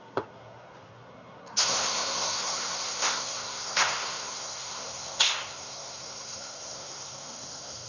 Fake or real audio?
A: fake